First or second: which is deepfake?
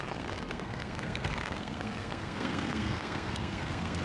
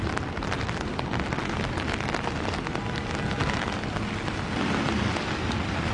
first